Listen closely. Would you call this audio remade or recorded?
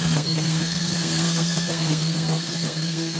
remade